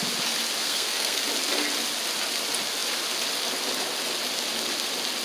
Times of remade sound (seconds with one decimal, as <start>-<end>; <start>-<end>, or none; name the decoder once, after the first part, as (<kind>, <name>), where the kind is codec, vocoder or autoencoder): 0.6-1.2 (codec, SNAC)